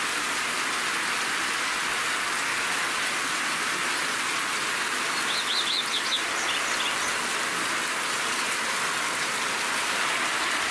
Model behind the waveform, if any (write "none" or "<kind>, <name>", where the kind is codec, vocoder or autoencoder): none